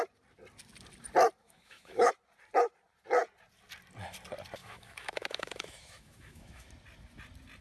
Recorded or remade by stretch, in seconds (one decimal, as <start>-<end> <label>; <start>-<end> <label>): 0.0-1.4 recorded; 1.4-2.1 remade; 2.1-4.6 recorded; 4.6-6.7 remade; 6.7-7.6 recorded